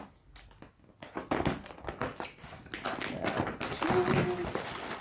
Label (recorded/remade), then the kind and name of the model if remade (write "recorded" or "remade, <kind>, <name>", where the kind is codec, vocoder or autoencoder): recorded